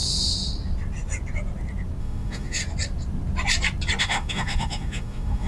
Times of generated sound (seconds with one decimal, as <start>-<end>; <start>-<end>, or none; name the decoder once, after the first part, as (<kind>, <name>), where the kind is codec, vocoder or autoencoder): 2.0-2.6 (autoencoder, DAC-VAE); 4.0-5.5